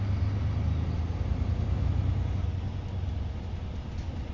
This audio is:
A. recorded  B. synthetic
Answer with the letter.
A